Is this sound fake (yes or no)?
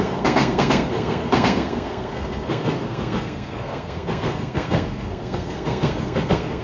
yes